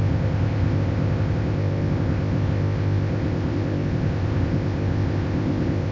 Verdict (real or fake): fake